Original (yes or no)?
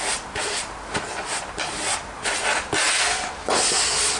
yes